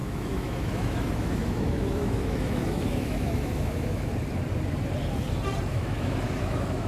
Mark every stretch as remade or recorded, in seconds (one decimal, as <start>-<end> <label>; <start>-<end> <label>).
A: 0.0-4.1 remade; 4.1-5.7 recorded; 5.7-6.9 remade